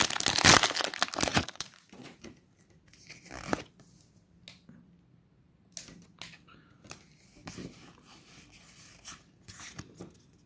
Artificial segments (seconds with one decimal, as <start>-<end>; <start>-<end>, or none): 1.3-2.3